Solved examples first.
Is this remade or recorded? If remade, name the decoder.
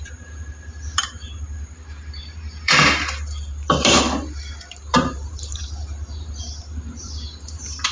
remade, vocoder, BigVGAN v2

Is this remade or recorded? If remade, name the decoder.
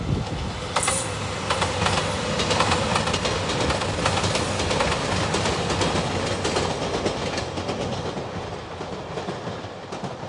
recorded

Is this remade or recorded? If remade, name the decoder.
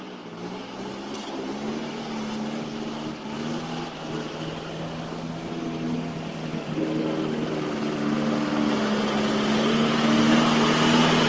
recorded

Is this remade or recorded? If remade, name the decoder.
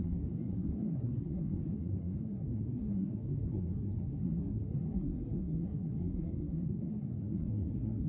remade, codec, SNAC